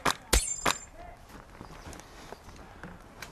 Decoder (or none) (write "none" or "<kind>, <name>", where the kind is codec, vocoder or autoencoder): none